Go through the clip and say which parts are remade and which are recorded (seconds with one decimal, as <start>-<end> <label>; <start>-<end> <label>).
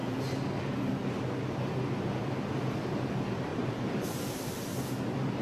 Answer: 0.0-3.5 recorded; 3.5-5.0 remade; 5.0-5.4 recorded